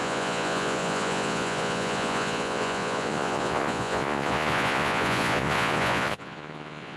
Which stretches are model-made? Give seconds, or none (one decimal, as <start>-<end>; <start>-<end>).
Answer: 0.0-7.0